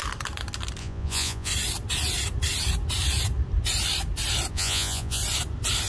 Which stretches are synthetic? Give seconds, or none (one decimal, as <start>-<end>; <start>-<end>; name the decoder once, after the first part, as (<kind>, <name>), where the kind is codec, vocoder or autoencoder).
0.8-1.5 (vocoder, Vocos); 4.5-5.2